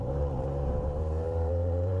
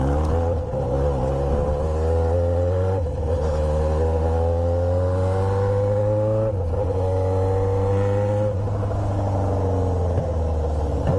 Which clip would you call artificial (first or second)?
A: first